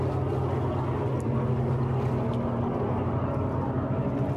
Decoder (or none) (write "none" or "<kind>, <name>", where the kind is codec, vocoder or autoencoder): none